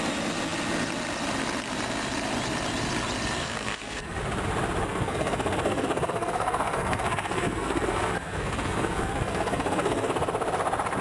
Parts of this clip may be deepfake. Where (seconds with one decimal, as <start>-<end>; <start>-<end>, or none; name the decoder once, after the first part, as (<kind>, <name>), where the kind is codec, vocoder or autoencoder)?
3.4-4.2 (codec, SNAC); 4.8-10.1